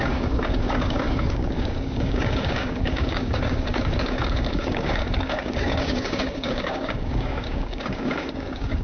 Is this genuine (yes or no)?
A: no